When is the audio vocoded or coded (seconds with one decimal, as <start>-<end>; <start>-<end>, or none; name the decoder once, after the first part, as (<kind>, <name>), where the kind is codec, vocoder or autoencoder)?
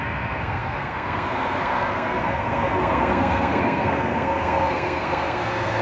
0.0-5.8 (codec, SNAC)